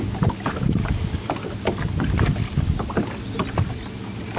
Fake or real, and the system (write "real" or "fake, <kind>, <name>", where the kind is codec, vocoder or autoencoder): real